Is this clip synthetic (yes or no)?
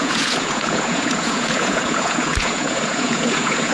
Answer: yes